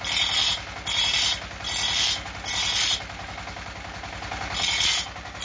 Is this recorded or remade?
recorded